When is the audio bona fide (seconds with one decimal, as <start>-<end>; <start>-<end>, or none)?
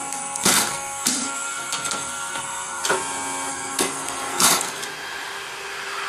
2.8-3.5; 4.8-6.1